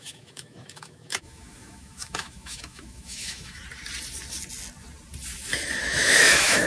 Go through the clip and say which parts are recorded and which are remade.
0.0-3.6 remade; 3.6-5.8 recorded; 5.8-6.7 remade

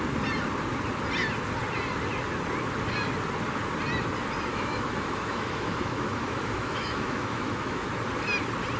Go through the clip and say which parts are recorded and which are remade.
0.0-4.5 recorded; 4.5-7.9 remade; 7.9-8.8 recorded

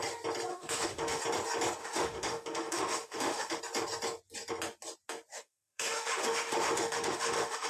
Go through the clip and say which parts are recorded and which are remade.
0.0-0.5 recorded; 0.5-1.2 remade; 1.2-1.8 recorded; 1.8-3.6 remade; 3.6-5.3 recorded; 5.3-7.7 remade

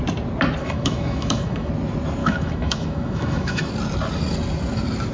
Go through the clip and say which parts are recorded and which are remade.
0.0-0.6 recorded; 0.6-1.7 remade; 1.7-2.2 recorded; 2.2-3.7 remade; 3.7-5.1 recorded

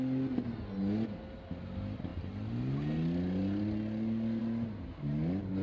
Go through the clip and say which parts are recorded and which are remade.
0.0-5.6 recorded

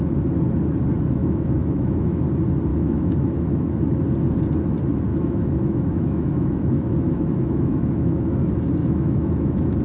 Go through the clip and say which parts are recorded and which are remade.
0.0-1.2 recorded; 1.2-2.2 remade; 2.2-2.7 recorded; 2.7-3.8 remade; 3.8-5.1 recorded; 5.1-8.3 remade; 8.3-8.8 recorded; 8.8-9.8 remade

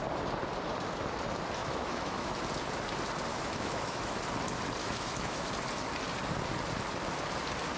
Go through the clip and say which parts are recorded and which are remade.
0.0-1.6 recorded; 1.6-2.3 remade; 2.3-3.3 recorded; 3.3-4.2 remade; 4.2-4.8 recorded; 4.8-5.5 remade; 5.5-7.8 recorded

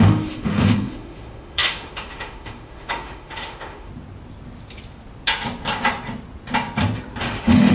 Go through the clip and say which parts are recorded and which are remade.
0.0-3.9 remade; 3.9-7.2 recorded; 7.2-7.7 remade